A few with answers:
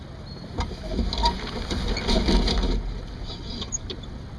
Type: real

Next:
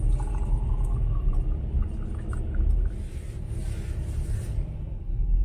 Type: real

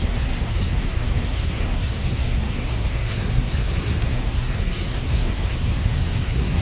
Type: fake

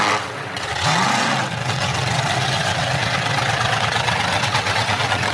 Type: fake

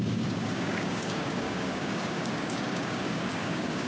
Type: fake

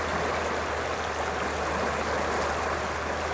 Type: real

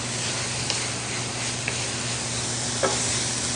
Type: real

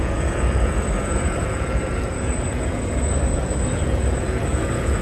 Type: fake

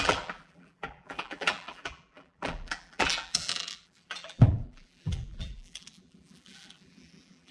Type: fake